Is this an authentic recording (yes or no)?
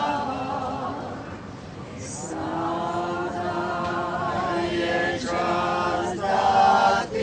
yes